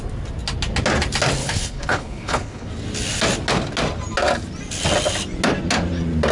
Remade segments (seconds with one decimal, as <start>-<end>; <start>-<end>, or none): 1.4-2.7